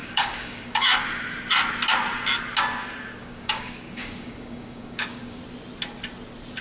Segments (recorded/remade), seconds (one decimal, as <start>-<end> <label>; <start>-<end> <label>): 0.0-1.0 remade; 1.0-3.2 recorded; 3.2-5.4 remade; 5.4-6.6 recorded